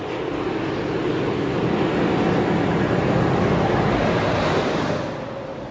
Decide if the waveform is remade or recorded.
recorded